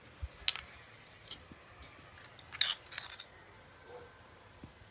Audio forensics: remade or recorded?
recorded